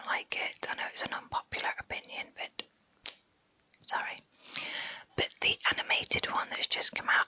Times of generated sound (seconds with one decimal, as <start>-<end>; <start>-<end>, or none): none